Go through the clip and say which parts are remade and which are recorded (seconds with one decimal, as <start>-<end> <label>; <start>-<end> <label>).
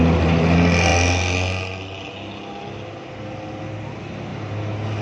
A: 0.0-5.0 recorded